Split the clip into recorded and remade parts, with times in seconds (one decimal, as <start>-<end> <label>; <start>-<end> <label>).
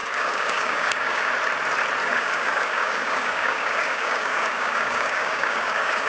0.0-1.3 remade; 1.3-2.0 recorded; 2.0-6.1 remade